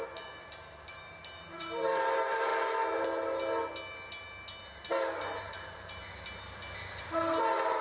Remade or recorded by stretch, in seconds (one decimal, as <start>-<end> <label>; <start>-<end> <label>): 0.0-2.5 remade; 2.5-5.4 recorded; 5.4-6.0 remade; 6.0-7.0 recorded; 7.0-7.8 remade